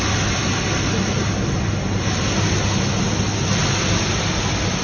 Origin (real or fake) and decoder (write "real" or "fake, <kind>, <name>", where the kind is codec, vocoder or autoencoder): real